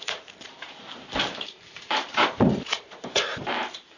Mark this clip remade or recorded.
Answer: remade